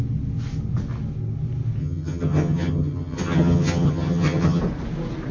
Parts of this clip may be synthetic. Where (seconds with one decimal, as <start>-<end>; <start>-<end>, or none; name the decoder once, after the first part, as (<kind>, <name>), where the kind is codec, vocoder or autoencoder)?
1.8-4.6 (vocoder, HiFi-GAN)